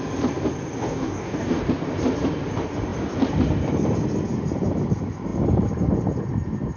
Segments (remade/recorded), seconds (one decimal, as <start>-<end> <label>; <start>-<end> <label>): 0.0-0.8 recorded; 0.8-1.6 remade; 1.6-6.8 recorded